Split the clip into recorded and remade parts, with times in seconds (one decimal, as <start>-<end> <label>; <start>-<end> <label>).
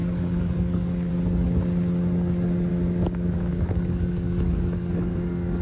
0.0-1.1 remade; 1.1-2.7 recorded; 2.7-5.6 remade